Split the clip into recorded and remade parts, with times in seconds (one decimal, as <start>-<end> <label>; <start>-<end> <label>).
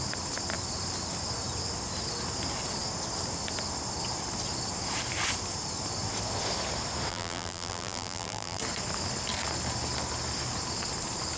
0.0-7.1 recorded; 7.1-8.6 remade; 8.6-11.4 recorded